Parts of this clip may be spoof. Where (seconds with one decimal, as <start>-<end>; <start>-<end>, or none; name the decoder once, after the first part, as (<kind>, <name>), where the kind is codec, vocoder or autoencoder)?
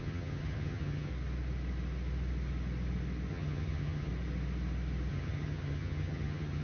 0.0-1.1 (vocoder, HiFi-GAN); 3.3-4.1; 5.1-6.6